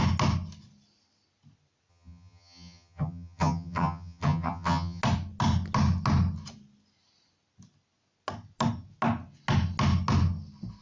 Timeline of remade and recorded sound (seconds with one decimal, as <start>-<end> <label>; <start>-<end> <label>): 0.0-1.9 recorded; 1.9-5.0 remade; 5.0-10.8 recorded